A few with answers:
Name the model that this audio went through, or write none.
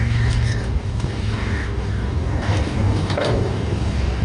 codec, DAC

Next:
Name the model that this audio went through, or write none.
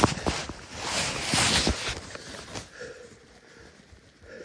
none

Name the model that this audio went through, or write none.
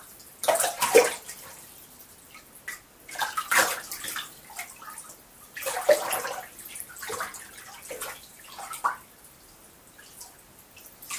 none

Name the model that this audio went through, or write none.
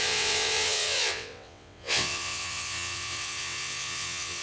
vocoder, WaveNeXt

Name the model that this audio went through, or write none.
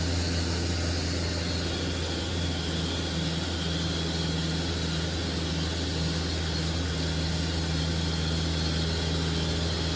none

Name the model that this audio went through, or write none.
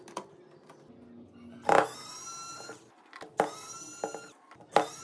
none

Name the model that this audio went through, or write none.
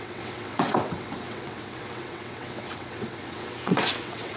vocoder, WaveNeXt